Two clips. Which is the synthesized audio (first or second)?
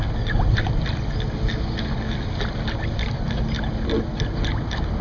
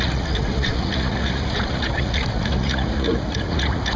second